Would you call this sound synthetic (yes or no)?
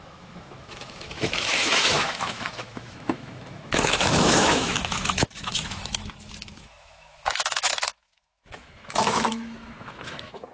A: yes